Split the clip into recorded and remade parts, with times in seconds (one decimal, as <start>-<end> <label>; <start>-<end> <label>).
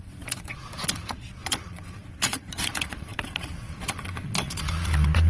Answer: 0.0-5.3 remade